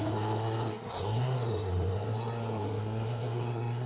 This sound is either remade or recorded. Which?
remade